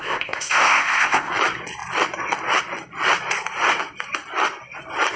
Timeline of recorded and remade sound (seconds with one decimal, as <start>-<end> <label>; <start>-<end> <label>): 0.0-1.3 remade; 1.3-5.2 recorded